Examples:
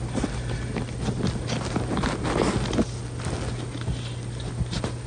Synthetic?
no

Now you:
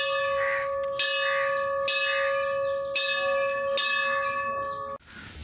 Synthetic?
no